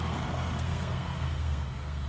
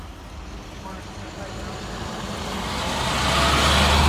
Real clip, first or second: second